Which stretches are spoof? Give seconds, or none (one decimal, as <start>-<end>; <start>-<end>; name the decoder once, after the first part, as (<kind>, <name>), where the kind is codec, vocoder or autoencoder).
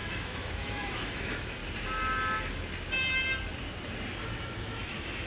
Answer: 0.0-1.6 (autoencoder, DAC-VAE); 4.6-5.3